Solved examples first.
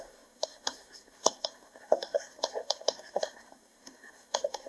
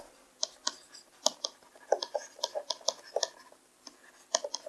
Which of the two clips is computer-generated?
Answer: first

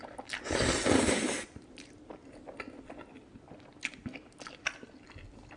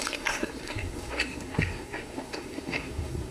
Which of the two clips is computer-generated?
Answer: second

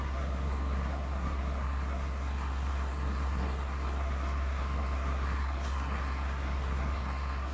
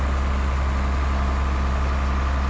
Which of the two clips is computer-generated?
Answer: first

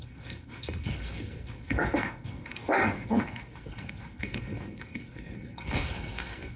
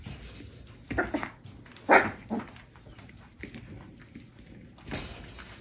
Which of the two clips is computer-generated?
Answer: first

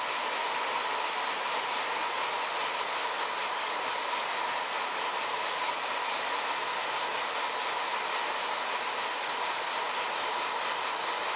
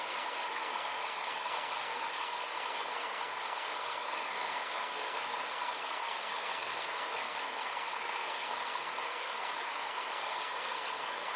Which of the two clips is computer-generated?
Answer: second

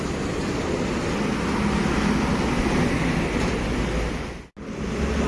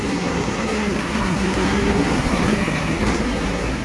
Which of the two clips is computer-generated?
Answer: second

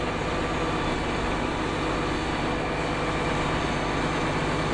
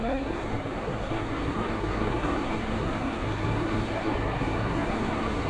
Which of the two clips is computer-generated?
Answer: second